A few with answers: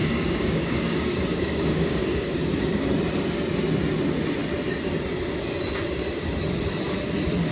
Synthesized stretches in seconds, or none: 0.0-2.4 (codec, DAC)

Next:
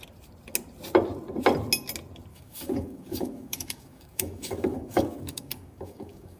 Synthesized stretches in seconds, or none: 2.3-6.4 (codec, DAC)

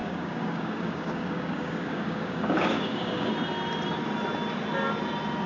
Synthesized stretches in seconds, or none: 0.0-3.3 (codec, DAC)

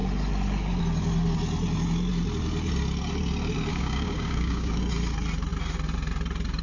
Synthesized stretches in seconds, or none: 3.7-4.8 (codec, DAC)

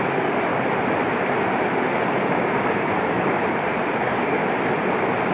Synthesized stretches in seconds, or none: 0.0-0.5 (codec, DAC); 2.1-3.4; 4.0-4.4

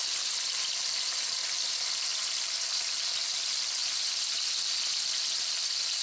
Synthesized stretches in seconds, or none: none